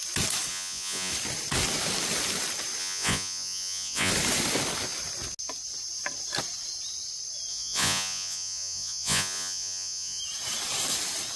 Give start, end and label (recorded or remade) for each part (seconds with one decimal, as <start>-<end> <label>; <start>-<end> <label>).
0.0-0.5 recorded; 0.5-1.1 remade; 1.1-2.8 recorded; 2.8-4.1 remade; 4.1-7.5 recorded; 7.5-10.2 remade; 10.2-11.4 recorded